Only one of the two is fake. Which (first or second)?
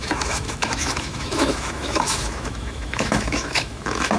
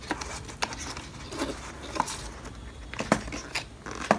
first